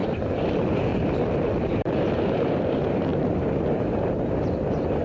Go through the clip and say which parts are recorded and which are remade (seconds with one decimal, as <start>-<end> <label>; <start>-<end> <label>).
0.0-0.5 recorded; 0.5-0.9 remade; 0.9-1.7 recorded; 1.7-5.0 remade